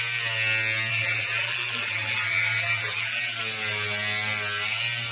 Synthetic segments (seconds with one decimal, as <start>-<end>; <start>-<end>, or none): 0.9-3.4